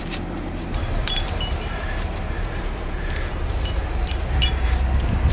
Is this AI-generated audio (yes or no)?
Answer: yes